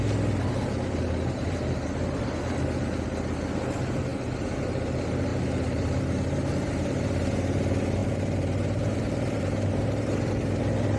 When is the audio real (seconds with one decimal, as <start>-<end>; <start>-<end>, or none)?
0.0-5.3; 7.0-8.0; 10.6-11.0